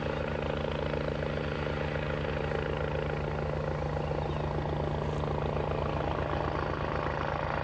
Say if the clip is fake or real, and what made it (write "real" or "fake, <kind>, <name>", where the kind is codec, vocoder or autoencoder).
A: real